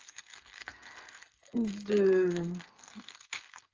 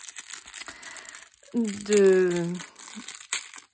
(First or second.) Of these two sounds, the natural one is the second